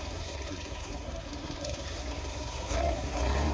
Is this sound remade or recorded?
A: remade